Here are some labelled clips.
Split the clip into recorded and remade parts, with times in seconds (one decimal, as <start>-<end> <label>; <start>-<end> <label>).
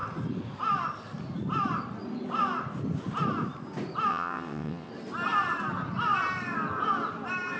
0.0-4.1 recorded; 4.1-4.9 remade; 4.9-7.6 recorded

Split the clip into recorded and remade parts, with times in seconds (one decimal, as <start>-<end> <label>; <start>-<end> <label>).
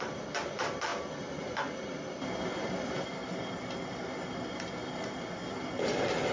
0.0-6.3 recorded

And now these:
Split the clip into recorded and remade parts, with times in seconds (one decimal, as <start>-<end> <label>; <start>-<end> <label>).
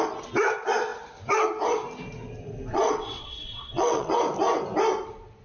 0.0-2.7 recorded; 2.7-4.2 remade; 4.2-5.4 recorded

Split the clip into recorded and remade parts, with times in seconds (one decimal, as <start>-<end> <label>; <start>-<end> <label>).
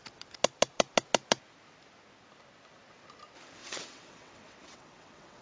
0.0-3.6 recorded; 3.6-5.4 remade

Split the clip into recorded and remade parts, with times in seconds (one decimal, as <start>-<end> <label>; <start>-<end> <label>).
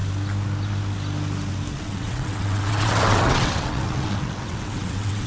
0.0-1.7 recorded; 1.7-5.3 remade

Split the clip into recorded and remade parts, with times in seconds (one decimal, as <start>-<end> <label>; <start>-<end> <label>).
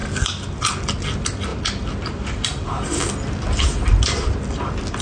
0.0-5.0 recorded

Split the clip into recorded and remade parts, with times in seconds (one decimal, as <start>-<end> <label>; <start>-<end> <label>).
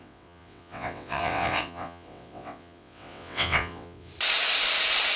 0.0-4.1 remade; 4.1-5.2 recorded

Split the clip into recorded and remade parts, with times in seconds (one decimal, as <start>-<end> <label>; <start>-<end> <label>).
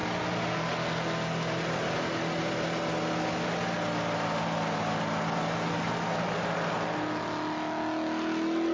0.0-8.7 recorded